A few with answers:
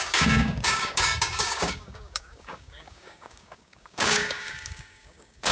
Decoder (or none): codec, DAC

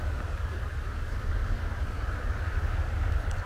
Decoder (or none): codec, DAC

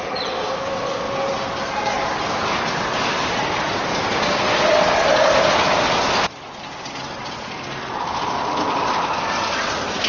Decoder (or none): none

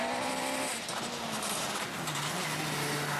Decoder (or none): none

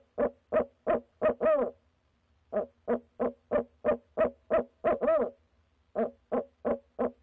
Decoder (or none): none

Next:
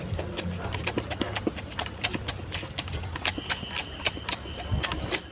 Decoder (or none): none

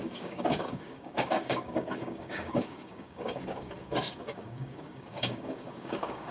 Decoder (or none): codec, DAC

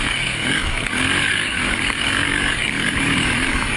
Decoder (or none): codec, DAC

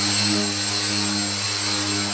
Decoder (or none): none